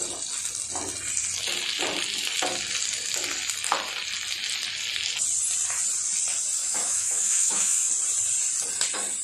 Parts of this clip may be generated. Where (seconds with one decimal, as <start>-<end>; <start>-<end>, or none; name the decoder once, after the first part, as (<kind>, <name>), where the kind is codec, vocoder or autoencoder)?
6.6-7.9 (autoencoder, DAC-VAE)